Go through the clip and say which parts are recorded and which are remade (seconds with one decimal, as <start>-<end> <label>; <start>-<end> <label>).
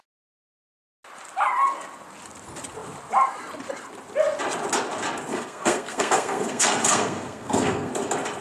0.0-5.3 recorded; 5.3-7.9 remade; 7.9-8.4 recorded